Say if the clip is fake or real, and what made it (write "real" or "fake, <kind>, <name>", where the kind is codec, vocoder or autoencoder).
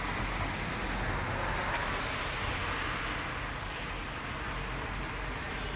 real